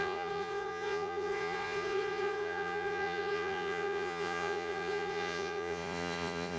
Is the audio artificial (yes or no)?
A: yes